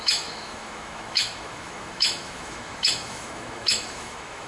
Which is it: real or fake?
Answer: fake